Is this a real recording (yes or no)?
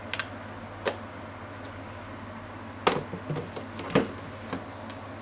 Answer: yes